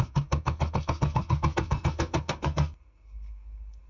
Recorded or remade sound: remade